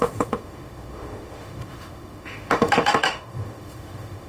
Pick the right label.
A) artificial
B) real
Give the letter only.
A